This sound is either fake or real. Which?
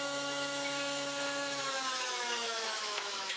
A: fake